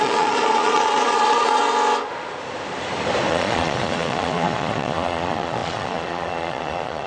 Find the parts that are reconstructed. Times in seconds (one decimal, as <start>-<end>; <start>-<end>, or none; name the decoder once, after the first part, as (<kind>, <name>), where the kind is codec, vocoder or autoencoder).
0.0-1.6 (vocoder, Vocos); 3.3-7.1

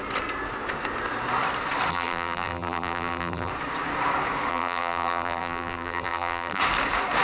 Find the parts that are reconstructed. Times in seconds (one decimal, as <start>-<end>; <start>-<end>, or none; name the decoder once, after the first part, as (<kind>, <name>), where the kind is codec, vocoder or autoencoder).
1.9-3.5 (vocoder, BigVGAN v2); 4.5-6.6

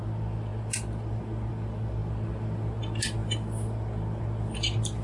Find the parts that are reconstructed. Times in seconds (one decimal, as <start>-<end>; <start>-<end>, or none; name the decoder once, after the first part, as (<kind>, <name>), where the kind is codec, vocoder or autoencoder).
none

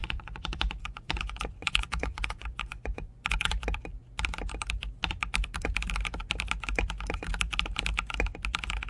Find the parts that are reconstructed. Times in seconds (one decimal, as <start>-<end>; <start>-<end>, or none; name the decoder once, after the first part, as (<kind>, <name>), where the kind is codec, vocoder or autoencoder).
0.0-3.5 (vocoder, Vocos)

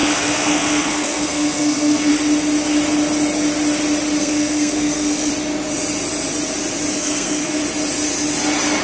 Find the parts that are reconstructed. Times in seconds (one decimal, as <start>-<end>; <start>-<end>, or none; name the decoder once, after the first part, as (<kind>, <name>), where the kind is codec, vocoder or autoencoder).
0.0-2.1 (codec, SNAC); 4.2-5.3; 6.9-7.6

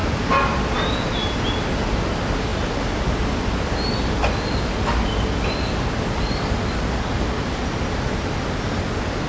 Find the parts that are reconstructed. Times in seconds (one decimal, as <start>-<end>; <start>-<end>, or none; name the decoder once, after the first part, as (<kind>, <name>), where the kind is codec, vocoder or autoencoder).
none